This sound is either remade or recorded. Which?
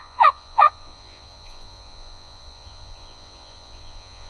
remade